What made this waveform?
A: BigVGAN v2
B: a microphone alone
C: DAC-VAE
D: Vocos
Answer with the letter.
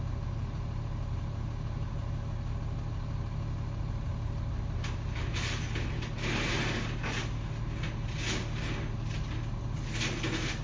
B